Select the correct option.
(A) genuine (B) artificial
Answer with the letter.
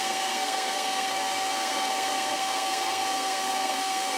B